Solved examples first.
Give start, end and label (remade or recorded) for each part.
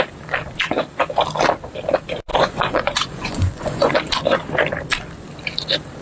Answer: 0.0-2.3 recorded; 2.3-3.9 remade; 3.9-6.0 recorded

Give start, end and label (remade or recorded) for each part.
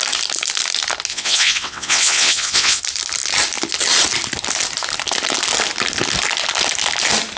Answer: 0.0-1.1 recorded; 1.1-2.8 remade; 2.8-7.4 recorded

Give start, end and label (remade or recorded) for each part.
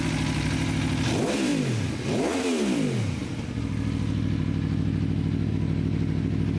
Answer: 0.0-6.6 recorded